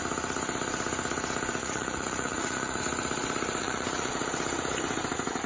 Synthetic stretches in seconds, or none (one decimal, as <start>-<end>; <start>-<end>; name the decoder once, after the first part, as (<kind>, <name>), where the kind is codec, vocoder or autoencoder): 1.6-2.8 (vocoder, Vocos); 3.6-4.1